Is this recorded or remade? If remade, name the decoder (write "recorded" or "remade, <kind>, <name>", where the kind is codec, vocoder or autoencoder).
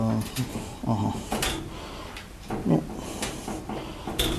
recorded